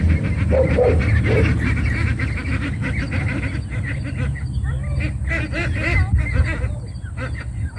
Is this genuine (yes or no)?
yes